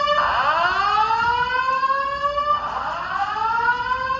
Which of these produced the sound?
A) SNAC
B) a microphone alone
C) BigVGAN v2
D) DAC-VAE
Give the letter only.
B